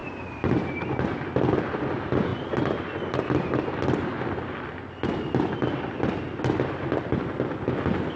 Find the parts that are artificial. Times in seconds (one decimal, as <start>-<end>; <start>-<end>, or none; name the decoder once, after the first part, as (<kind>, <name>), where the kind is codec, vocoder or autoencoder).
none